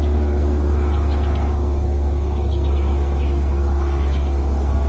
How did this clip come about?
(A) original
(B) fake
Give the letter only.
B